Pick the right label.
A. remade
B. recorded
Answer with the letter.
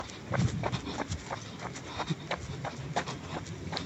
B